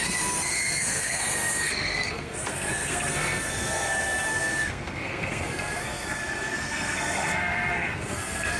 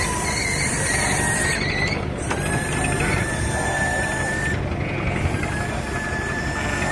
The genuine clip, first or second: second